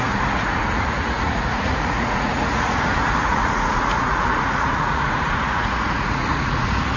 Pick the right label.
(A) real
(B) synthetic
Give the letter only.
B